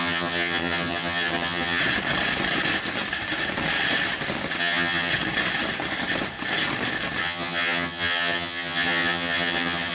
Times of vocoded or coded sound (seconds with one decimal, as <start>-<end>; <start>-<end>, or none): 0.0-1.8; 4.6-5.1; 7.2-9.9